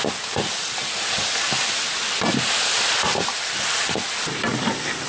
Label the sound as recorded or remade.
recorded